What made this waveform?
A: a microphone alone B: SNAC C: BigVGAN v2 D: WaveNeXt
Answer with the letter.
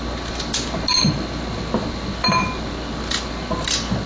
A